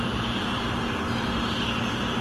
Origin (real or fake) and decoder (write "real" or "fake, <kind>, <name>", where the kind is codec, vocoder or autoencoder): real